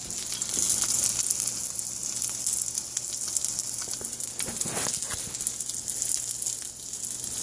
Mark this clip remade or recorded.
recorded